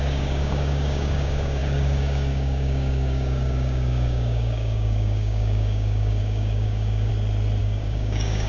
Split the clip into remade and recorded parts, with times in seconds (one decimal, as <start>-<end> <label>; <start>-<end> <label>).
0.0-7.1 remade; 7.1-7.6 recorded; 7.6-8.5 remade